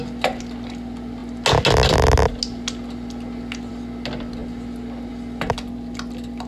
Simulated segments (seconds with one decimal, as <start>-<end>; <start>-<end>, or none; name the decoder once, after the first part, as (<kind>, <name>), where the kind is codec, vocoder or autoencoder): none